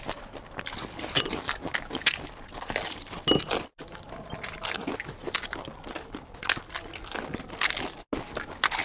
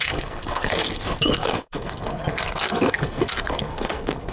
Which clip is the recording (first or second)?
first